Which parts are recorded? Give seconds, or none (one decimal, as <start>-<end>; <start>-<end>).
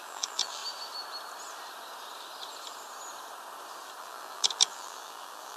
0.6-4.0